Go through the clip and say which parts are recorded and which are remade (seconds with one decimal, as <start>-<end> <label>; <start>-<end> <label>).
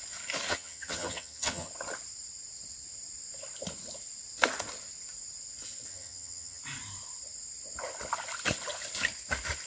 0.0-0.5 recorded; 0.5-1.7 remade; 1.7-5.9 recorded; 5.9-6.6 remade; 6.6-9.7 recorded